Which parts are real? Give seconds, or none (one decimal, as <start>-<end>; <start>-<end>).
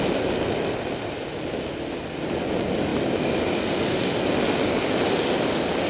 0.0-5.9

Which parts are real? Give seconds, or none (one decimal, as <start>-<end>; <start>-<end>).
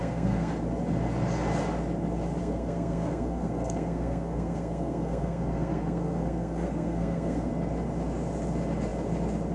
0.5-2.4; 7.5-9.5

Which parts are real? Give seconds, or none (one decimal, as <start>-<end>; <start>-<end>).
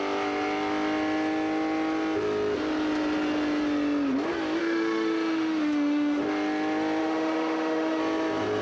0.0-4.6; 6.2-7.0; 8.0-8.6